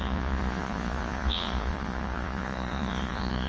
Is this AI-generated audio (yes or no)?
yes